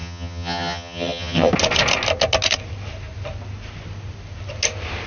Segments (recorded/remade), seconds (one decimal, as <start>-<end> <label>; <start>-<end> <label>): 0.0-1.5 remade; 1.5-5.1 recorded